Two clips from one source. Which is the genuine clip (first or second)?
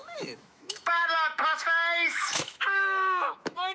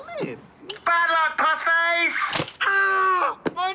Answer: second